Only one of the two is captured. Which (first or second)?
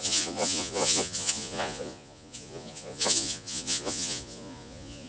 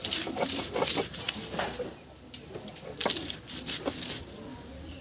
second